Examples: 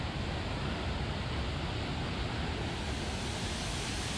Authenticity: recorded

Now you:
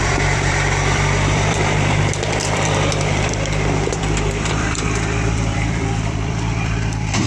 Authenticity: remade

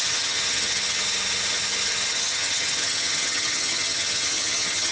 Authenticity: remade